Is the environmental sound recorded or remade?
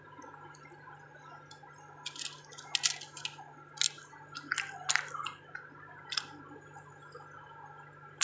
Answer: recorded